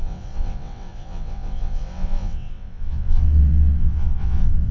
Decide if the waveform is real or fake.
fake